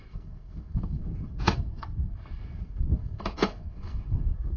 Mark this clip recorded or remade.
remade